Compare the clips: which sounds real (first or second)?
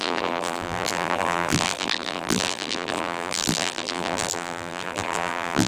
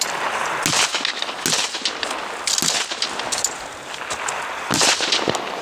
second